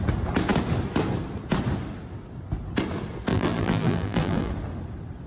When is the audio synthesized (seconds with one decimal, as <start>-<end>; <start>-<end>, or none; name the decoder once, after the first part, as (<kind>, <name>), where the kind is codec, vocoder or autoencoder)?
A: 3.3-4.5 (vocoder, BigVGAN v2)